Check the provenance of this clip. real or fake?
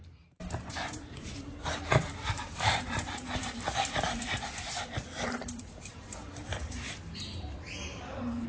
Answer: fake